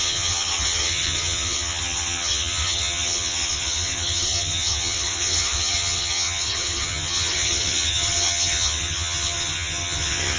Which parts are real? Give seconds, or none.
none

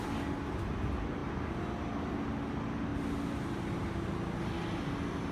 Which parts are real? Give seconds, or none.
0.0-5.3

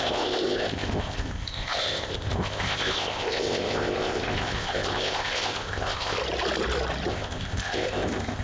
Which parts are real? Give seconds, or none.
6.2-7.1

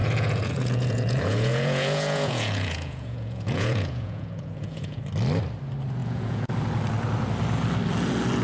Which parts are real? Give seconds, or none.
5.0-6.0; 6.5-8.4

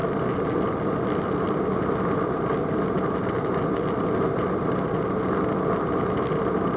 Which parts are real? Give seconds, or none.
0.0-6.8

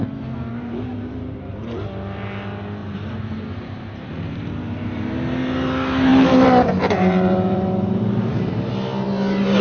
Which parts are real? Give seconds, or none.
0.0-0.5; 1.5-2.8; 5.0-6.1; 8.7-9.6

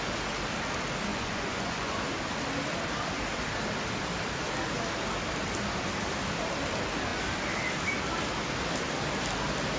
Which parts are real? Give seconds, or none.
0.0-1.1; 2.0-9.8